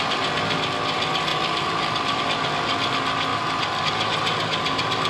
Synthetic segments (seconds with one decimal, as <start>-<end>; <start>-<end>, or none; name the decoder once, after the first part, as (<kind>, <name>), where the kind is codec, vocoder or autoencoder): none